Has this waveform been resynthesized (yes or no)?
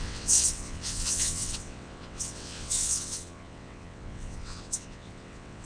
yes